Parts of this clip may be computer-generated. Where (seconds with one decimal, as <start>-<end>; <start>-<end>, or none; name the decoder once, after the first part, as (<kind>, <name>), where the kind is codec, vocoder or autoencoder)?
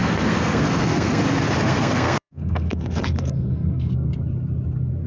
0.0-1.2 (codec, SNAC); 1.7-4.1